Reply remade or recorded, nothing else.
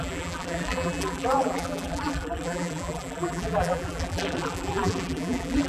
remade